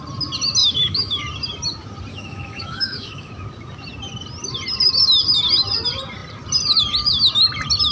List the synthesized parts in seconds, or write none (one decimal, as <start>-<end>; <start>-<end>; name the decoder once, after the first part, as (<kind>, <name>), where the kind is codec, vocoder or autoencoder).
0.6-1.2 (autoencoder, DAC-VAE); 2.1-3.3